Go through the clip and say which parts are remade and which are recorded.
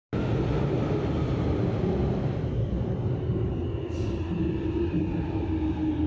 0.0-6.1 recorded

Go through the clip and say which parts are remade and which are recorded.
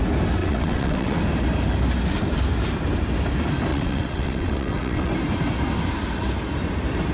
0.0-0.4 recorded; 0.4-1.2 remade; 1.2-3.7 recorded; 3.7-5.1 remade; 5.1-7.1 recorded